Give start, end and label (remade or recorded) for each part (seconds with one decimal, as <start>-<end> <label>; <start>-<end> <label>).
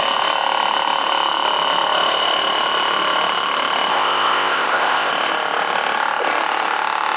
0.0-3.9 recorded; 3.9-5.1 remade; 5.1-7.2 recorded